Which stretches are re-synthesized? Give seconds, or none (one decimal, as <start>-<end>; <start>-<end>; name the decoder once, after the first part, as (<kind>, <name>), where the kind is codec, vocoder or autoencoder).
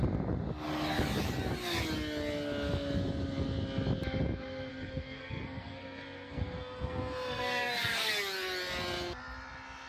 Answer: 4.7-8.1 (codec, SNAC)